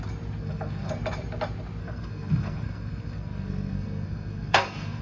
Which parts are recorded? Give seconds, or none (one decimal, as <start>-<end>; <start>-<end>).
0.0-0.4; 0.9-1.8